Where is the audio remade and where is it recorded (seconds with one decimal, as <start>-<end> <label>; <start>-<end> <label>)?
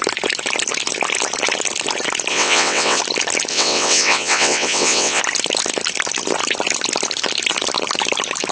0.0-2.3 recorded; 2.3-3.0 remade; 3.0-3.5 recorded; 3.5-5.2 remade; 5.2-8.5 recorded